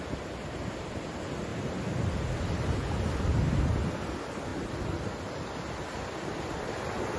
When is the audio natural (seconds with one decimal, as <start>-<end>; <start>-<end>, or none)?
0.0-7.2